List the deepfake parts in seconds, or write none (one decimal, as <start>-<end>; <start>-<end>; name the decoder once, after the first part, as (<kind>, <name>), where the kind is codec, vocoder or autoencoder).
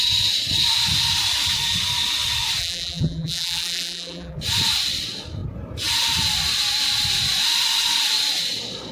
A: 2.6-4.4 (vocoder, BigVGAN v2)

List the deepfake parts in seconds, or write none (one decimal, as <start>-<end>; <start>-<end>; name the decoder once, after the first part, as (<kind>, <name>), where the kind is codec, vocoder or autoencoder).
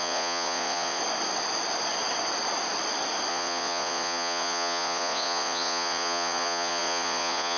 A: 0.0-1.0 (vocoder, Vocos); 3.3-7.6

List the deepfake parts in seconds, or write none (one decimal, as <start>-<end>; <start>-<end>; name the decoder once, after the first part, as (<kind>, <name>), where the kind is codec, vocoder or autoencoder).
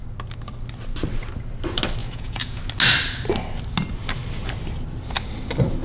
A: 2.0-2.6 (vocoder, Vocos)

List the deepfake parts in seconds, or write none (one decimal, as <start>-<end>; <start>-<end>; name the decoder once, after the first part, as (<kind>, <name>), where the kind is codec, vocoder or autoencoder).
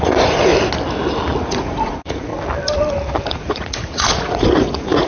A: 0.0-0.5 (vocoder, Vocos); 1.4-2.3; 3.3-5.1